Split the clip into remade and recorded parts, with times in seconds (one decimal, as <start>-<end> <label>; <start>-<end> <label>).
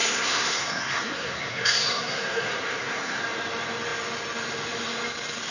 0.0-3.2 remade; 3.2-5.5 recorded